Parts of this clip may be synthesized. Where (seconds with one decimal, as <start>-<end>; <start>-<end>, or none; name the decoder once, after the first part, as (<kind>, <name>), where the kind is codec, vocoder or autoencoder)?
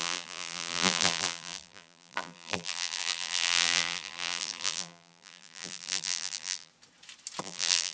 0.0-6.7 (vocoder, BigVGAN v2); 7.4-7.9